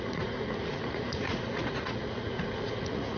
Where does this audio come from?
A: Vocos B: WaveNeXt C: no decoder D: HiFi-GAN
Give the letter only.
A